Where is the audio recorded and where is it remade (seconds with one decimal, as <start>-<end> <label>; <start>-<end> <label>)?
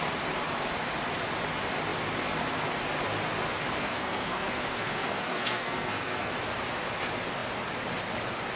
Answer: 0.0-3.8 recorded; 3.8-6.3 remade; 6.3-8.6 recorded